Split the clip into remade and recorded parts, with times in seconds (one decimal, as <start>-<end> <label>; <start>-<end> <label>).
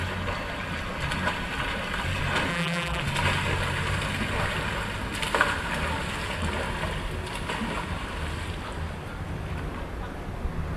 0.0-2.5 recorded; 2.5-3.0 remade; 3.0-10.8 recorded